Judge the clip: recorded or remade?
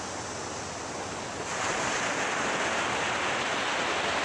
recorded